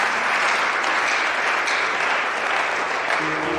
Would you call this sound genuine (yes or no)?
yes